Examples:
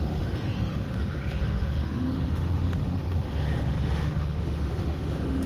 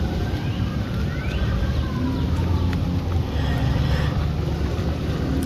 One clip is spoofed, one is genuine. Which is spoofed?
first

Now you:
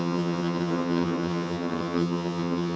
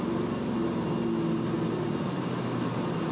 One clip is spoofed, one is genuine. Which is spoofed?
first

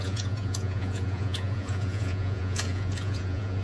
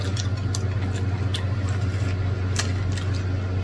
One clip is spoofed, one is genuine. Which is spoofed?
first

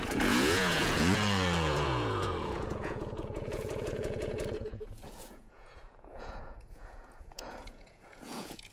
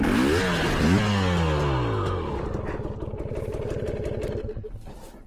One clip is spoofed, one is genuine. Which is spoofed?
first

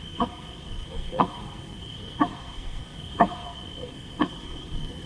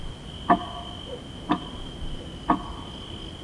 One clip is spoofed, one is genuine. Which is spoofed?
first